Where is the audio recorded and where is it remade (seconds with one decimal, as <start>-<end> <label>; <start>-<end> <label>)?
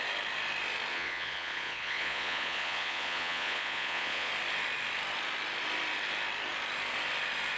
0.0-0.9 recorded; 0.9-4.3 remade; 4.3-7.6 recorded